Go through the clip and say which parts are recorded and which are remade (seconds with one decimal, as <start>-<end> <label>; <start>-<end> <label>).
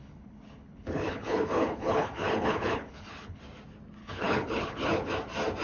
0.0-3.4 remade; 3.4-4.0 recorded; 4.0-5.1 remade; 5.1-5.6 recorded